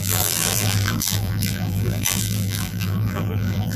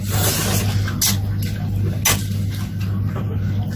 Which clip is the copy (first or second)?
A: first